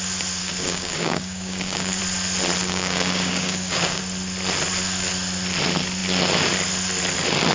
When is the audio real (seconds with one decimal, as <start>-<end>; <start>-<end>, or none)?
0.0-0.4; 2.0-2.6; 4.0-7.5